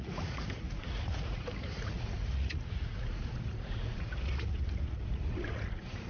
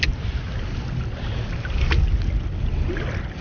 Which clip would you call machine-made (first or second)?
first